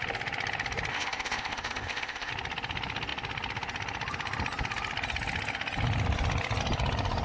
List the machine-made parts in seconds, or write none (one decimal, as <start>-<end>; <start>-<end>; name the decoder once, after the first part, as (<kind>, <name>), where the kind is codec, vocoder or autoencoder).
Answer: 0.9-2.3 (codec, ZipCodec)